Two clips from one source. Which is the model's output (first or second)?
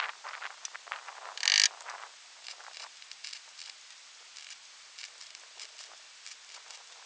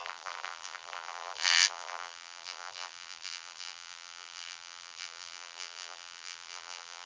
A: second